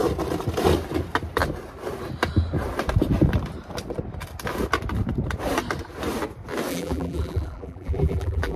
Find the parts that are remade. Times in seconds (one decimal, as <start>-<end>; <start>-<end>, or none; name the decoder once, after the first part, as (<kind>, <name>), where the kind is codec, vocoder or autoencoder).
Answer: 6.7-8.6 (vocoder, BigVGAN v2)